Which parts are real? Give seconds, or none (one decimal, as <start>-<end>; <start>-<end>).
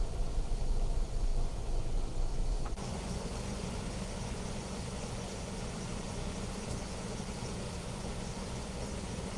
none